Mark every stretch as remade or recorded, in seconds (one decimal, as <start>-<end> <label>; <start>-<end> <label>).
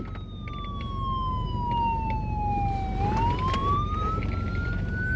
0.0-3.6 recorded; 3.6-4.2 remade; 4.2-5.2 recorded